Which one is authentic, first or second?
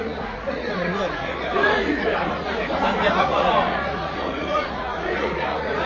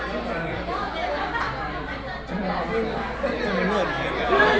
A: second